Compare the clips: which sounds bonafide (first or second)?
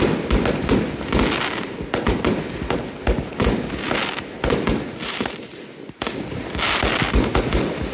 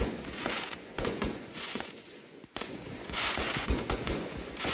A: first